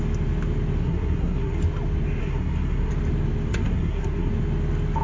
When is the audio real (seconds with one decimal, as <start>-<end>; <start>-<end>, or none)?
0.0-0.8; 1.6-2.2; 2.9-3.5; 4.3-5.0